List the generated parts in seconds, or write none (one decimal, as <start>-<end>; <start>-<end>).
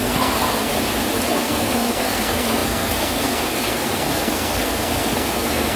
0.0-0.7; 1.3-5.8